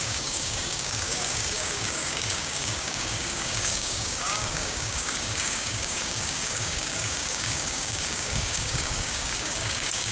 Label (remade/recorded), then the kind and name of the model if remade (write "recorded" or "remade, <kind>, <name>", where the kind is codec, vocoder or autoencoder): remade, codec, DAC